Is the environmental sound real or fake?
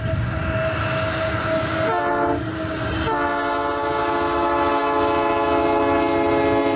real